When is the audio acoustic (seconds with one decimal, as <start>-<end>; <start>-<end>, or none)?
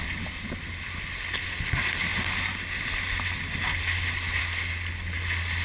0.0-5.6